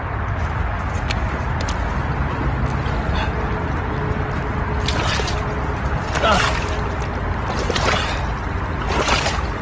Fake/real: real